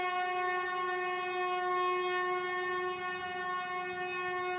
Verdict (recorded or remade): recorded